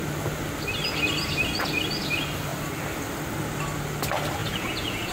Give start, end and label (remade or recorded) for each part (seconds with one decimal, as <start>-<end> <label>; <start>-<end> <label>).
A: 0.0-4.4 recorded; 4.4-5.1 remade